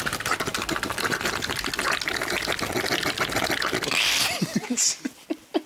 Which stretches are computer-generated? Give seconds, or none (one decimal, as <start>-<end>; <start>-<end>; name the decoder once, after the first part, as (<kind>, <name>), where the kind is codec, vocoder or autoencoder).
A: none